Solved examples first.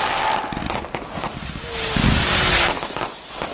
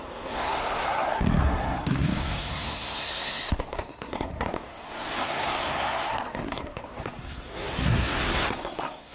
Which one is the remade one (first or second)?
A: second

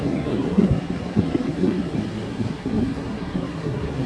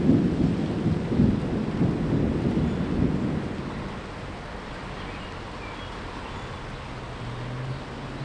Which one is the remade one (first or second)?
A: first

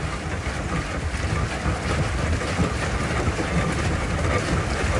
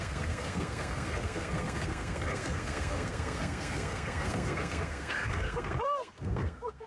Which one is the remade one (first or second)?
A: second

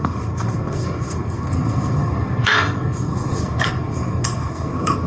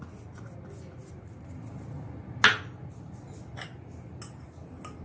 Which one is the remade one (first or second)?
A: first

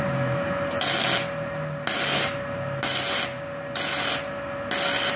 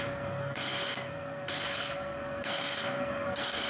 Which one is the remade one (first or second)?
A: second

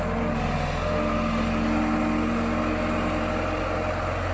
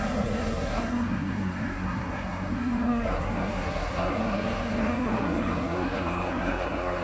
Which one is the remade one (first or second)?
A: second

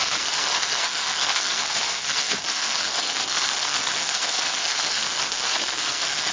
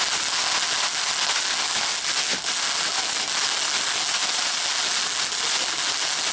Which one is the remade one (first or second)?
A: first